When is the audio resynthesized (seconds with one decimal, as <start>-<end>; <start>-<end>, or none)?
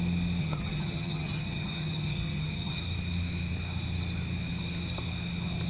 0.4-2.8